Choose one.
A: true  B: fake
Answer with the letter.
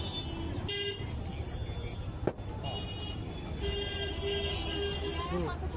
A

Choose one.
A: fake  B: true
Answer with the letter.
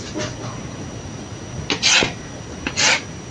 B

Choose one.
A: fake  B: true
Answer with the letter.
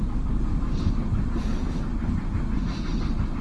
B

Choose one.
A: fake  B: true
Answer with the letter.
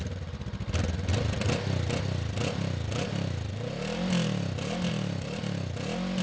B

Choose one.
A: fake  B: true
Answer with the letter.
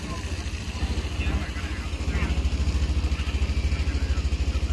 B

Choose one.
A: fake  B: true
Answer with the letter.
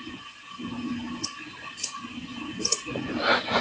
A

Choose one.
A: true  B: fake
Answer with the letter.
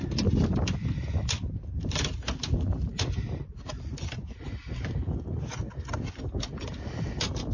A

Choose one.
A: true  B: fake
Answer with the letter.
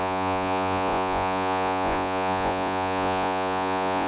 B